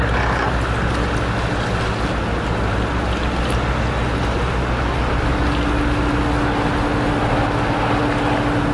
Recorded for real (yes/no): yes